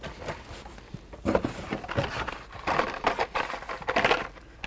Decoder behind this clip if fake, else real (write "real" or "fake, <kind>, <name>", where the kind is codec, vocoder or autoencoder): real